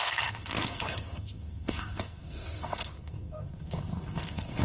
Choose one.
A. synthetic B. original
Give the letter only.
A